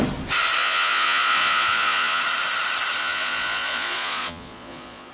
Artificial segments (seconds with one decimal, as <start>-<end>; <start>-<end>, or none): 0.6-2.2; 3.0-5.1